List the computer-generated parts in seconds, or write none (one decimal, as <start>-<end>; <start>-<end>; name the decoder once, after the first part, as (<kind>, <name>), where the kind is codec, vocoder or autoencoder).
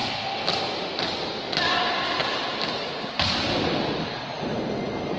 none